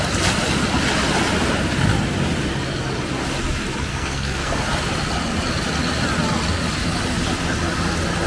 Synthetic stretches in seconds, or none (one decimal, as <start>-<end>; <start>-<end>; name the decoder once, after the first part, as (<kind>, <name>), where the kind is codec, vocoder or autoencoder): 3.9-4.6 (codec, SNAC)